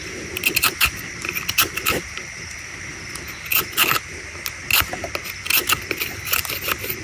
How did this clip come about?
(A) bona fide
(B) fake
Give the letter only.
A